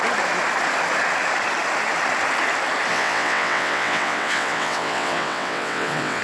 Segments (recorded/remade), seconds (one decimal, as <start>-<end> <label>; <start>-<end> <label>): 0.0-2.9 recorded; 2.9-6.2 remade